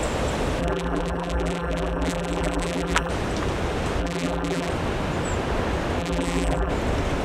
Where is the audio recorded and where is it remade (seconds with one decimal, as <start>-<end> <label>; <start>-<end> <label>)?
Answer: 0.0-0.6 recorded; 0.6-3.1 remade; 3.1-4.0 recorded; 4.0-4.7 remade; 4.7-6.0 recorded; 6.0-6.7 remade; 6.7-7.2 recorded